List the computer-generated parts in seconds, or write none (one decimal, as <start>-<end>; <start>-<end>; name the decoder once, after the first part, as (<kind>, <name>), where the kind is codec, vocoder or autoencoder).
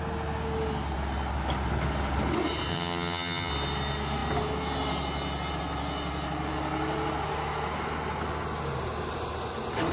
2.7-3.5 (vocoder, HiFi-GAN)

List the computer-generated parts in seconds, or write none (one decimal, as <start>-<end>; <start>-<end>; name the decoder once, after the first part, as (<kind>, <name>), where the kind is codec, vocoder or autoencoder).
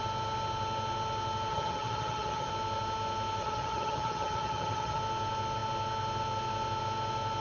1.5-2.5 (vocoder, HiFi-GAN); 3.4-5.0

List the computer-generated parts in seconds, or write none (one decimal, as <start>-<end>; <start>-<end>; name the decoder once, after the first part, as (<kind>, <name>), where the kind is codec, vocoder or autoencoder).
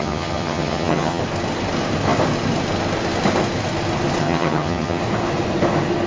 0.0-1.2 (vocoder, HiFi-GAN); 4.2-5.0